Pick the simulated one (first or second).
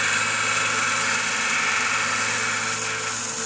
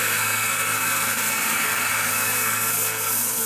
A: second